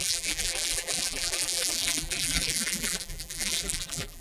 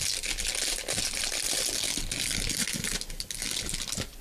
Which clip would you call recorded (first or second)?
second